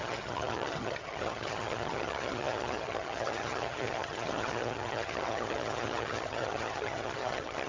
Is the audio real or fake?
fake